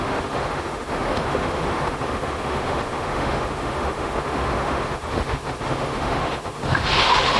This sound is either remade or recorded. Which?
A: remade